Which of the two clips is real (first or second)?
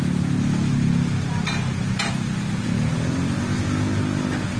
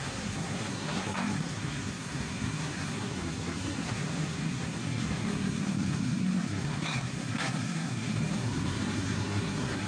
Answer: first